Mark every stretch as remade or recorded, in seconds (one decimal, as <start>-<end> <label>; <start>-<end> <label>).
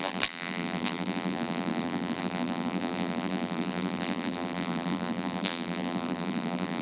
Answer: 0.0-6.8 remade